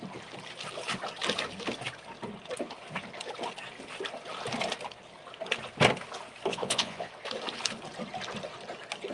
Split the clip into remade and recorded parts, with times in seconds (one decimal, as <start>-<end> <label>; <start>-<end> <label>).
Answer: 0.0-6.5 recorded; 6.5-7.1 remade; 7.1-9.1 recorded